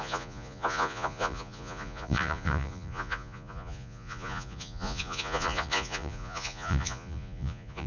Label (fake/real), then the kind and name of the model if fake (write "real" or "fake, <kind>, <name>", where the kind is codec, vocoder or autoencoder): fake, vocoder, Vocos